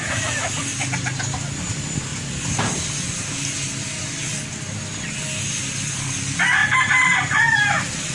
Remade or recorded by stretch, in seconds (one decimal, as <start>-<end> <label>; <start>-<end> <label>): 0.0-0.7 remade; 0.7-1.6 recorded; 1.6-8.1 remade